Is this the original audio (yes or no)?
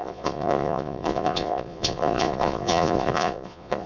no